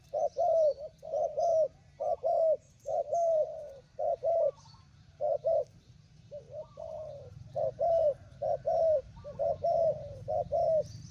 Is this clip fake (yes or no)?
yes